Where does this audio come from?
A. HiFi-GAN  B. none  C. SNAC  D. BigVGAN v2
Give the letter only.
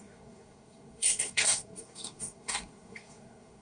C